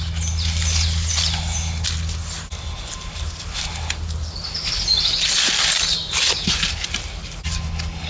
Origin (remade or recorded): recorded